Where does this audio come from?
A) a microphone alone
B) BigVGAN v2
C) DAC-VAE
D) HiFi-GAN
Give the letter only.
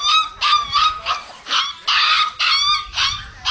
A